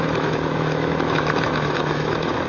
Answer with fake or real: fake